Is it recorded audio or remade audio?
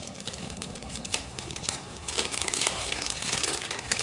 remade